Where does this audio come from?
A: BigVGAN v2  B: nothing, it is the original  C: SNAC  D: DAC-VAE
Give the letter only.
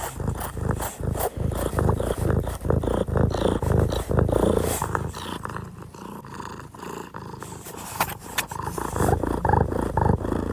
B